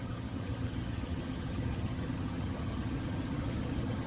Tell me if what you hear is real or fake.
fake